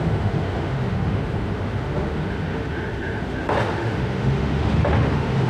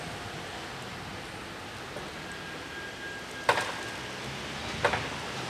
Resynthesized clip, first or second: first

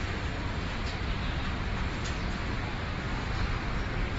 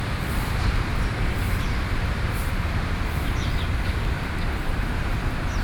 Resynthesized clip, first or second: second